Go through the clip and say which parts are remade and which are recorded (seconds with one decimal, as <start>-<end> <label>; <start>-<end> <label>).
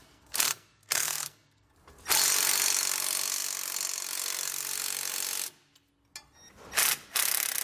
0.0-1.7 remade; 1.7-7.6 recorded